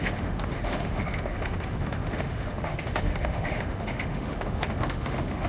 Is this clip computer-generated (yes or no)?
yes